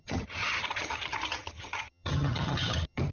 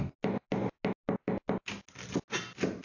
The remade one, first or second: first